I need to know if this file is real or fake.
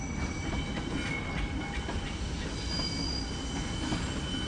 real